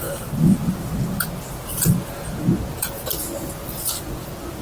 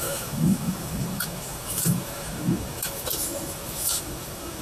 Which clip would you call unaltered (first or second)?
first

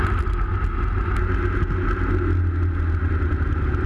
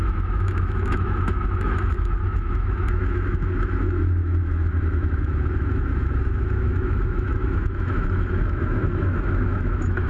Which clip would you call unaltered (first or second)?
first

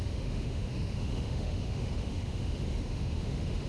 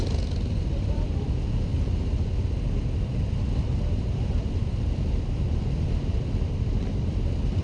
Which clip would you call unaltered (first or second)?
second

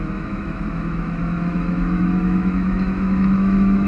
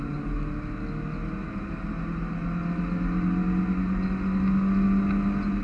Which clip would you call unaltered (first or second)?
second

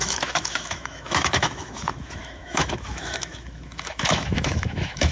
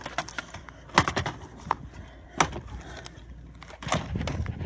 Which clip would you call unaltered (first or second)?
second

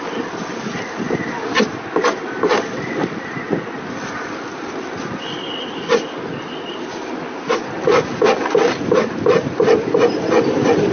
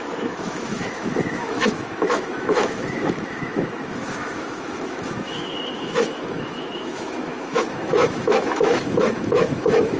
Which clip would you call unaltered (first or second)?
first